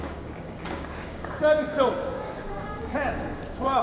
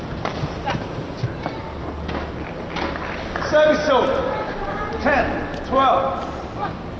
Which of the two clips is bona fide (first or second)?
second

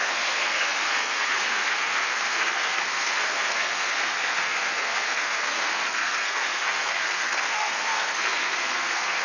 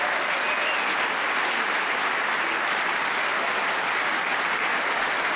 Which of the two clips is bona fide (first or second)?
second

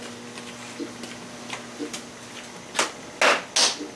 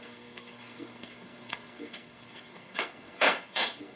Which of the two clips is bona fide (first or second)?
first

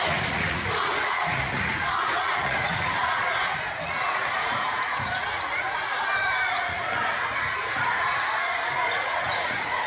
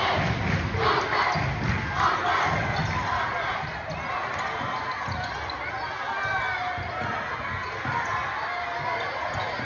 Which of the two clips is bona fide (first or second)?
second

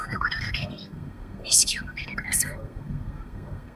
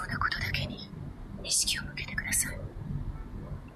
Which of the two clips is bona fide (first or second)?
second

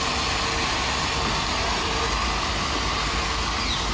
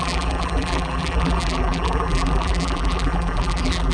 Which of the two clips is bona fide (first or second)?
first